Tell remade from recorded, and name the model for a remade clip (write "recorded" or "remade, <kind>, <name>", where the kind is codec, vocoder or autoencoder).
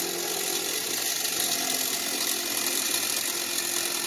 recorded